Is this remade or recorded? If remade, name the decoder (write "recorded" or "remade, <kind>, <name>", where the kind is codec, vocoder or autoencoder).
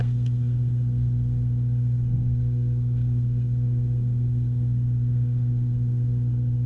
remade, codec, SNAC